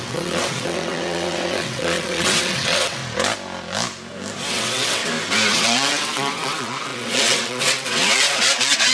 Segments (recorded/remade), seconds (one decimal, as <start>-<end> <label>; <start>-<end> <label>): 0.0-3.0 remade; 3.0-4.5 recorded; 4.5-5.0 remade; 5.0-5.5 recorded; 5.5-8.9 remade

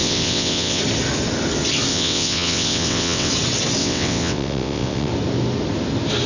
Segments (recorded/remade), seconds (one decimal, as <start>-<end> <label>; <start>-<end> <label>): 0.0-0.8 remade; 0.8-1.9 recorded; 1.9-3.3 remade; 3.3-3.8 recorded; 3.8-5.1 remade; 5.1-6.3 recorded

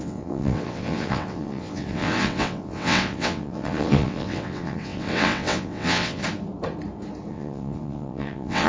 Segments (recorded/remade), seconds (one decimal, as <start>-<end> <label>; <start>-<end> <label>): 0.0-6.2 remade; 6.2-7.3 recorded; 7.3-8.7 remade

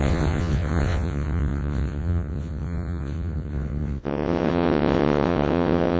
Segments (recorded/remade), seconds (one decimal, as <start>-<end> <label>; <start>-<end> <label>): 0.0-6.0 remade

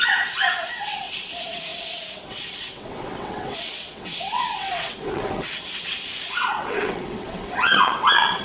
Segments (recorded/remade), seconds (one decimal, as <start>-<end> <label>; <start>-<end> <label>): 0.0-8.4 remade

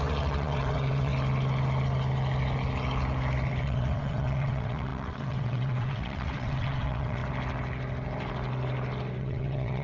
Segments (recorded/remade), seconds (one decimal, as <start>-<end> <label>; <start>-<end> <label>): 0.0-1.1 remade; 1.1-3.6 recorded; 3.6-7.2 remade; 7.2-9.2 recorded; 9.2-9.8 remade